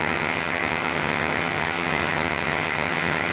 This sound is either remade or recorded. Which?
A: remade